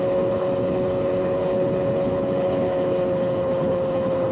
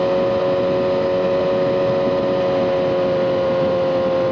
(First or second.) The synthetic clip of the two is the first